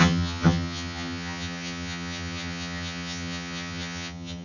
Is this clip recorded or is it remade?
remade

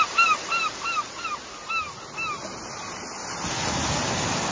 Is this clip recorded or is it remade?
recorded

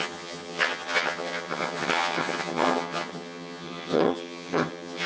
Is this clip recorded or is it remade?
remade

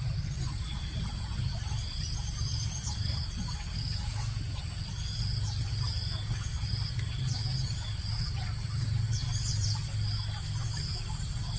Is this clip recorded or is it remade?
recorded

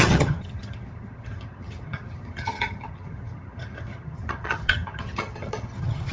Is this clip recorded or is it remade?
remade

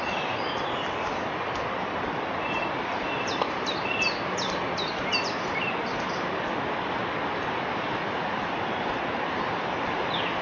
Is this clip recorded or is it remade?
recorded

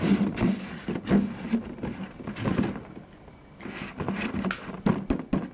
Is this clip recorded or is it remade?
recorded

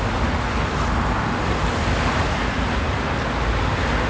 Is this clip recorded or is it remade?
recorded